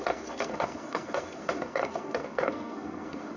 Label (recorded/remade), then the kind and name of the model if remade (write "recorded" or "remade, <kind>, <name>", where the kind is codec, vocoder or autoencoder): remade, codec, SNAC